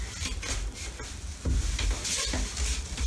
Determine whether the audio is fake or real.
real